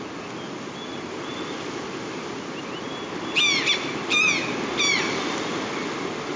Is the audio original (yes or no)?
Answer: yes